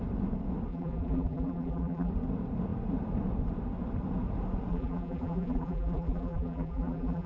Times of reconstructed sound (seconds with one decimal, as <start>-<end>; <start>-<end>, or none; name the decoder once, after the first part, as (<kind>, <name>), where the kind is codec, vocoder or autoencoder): 0.7-2.1 (vocoder, BigVGAN v2); 4.7-7.3